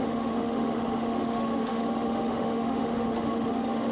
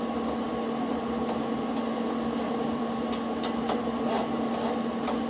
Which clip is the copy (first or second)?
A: first